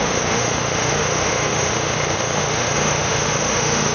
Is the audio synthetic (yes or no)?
yes